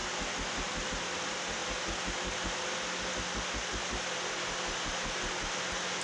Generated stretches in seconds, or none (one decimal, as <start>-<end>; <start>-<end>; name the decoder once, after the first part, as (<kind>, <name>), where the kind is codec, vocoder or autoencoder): none